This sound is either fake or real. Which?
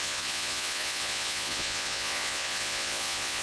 fake